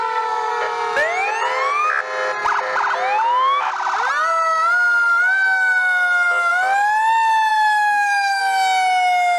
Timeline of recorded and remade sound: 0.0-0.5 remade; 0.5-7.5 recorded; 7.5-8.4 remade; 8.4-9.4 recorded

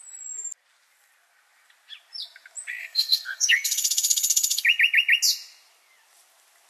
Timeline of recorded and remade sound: 0.0-2.8 recorded; 2.8-4.6 remade; 4.6-6.7 recorded

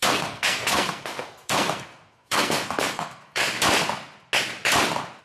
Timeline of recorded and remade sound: 0.0-3.4 remade; 3.4-5.2 recorded

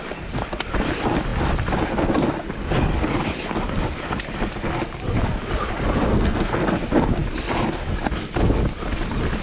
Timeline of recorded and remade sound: 0.0-6.1 recorded; 6.1-6.6 remade; 6.6-9.4 recorded

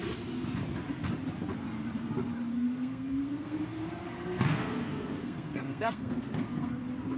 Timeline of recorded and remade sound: 0.0-2.5 recorded; 2.5-6.8 remade; 6.8-7.2 recorded

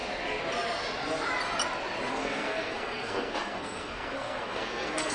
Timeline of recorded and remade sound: 0.0-2.1 recorded; 2.1-5.1 remade

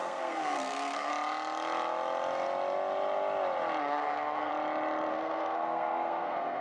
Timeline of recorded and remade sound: 0.0-1.1 remade; 1.1-3.8 recorded; 3.8-4.5 remade; 4.5-5.1 recorded; 5.1-6.6 remade